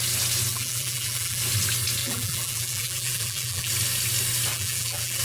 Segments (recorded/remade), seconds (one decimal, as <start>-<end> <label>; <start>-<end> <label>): 0.0-0.5 recorded; 0.5-1.4 remade; 1.4-2.0 recorded; 2.0-3.7 remade; 3.7-4.5 recorded; 4.5-5.2 remade

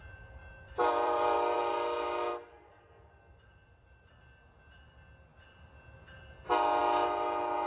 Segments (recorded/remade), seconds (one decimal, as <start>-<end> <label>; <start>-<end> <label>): 0.0-0.4 recorded; 0.4-1.6 remade; 1.6-2.3 recorded; 2.3-4.1 remade; 4.1-7.7 recorded

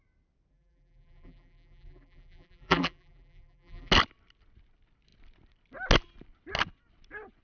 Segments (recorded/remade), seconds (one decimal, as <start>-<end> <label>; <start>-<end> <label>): 0.0-0.5 recorded; 0.5-3.9 remade; 3.9-7.4 recorded

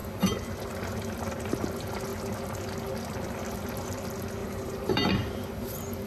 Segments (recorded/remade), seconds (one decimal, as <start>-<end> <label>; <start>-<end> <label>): 0.0-4.4 recorded; 4.4-5.3 remade; 5.3-6.1 recorded

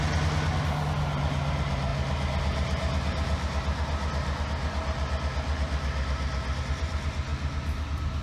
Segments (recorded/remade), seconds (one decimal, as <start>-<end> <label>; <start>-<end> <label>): 0.0-8.2 recorded

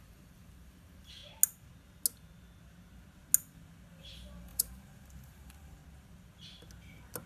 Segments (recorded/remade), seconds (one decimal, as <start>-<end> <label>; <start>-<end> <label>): 0.0-1.2 remade; 1.2-4.0 recorded; 4.0-5.8 remade; 5.8-7.3 recorded

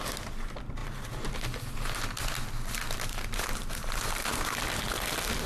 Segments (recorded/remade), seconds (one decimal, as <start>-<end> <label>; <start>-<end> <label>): 0.0-5.5 recorded